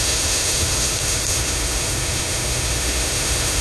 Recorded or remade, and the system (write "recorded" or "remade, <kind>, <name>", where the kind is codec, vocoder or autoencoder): remade, autoencoder, DAC-VAE